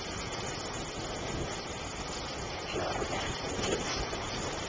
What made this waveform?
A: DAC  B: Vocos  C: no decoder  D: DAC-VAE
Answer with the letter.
C